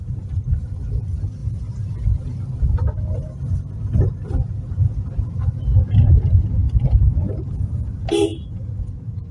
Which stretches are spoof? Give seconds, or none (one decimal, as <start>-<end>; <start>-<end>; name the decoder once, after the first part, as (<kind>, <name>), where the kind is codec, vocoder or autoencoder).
8.3-9.3 (vocoder, Vocos)